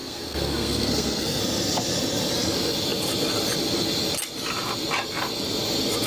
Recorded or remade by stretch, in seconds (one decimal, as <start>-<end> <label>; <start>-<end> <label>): 0.0-1.4 remade; 1.4-6.1 recorded